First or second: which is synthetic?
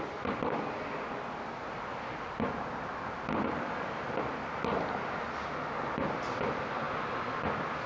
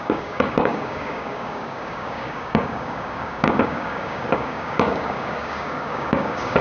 second